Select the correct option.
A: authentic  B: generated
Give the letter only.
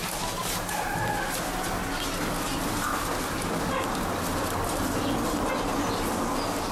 A